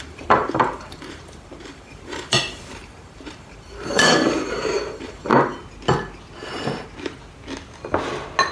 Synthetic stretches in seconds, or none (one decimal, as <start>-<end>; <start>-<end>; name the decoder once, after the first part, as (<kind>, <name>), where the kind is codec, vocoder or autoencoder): 0.0-5.3 (vocoder, BigVGAN v2)